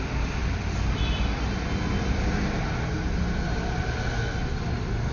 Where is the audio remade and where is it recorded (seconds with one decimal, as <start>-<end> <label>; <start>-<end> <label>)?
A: 0.0-5.1 recorded